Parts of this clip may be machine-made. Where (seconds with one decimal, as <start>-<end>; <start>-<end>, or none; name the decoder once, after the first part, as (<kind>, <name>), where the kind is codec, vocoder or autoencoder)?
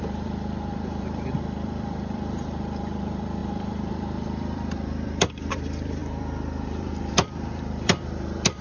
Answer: 0.0-8.6 (vocoder, BigVGAN v2)